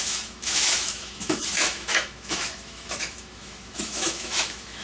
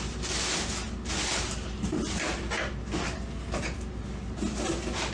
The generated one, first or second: first